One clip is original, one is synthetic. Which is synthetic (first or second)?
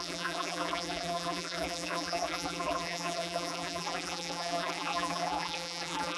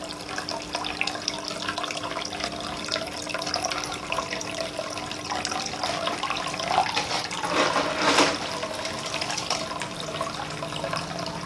first